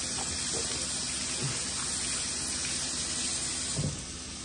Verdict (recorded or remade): recorded